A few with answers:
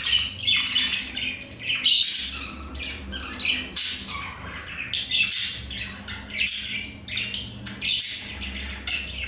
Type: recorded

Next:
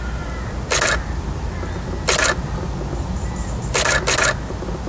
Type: recorded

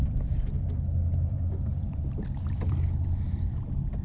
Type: remade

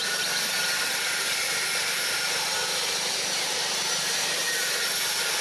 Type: remade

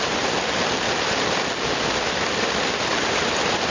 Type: recorded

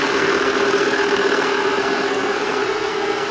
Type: remade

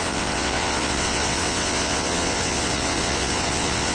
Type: remade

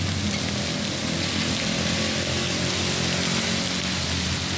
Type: recorded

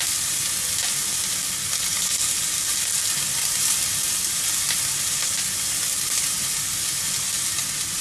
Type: recorded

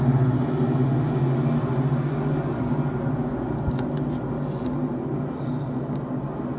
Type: recorded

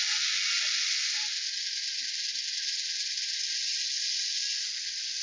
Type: recorded